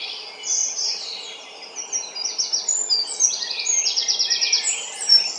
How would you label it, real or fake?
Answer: real